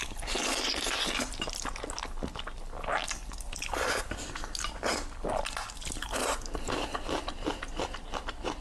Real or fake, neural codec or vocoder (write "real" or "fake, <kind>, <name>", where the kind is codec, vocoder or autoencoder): real